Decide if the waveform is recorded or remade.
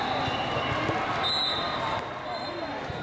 recorded